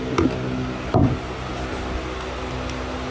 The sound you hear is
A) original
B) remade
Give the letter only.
A